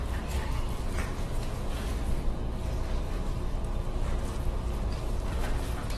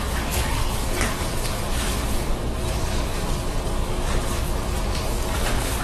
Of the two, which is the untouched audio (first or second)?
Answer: first